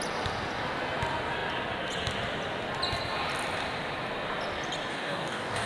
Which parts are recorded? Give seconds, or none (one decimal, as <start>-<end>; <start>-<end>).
0.0-4.9